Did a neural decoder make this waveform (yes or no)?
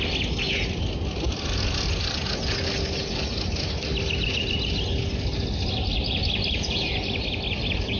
no